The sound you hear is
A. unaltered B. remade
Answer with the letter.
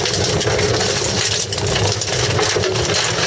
A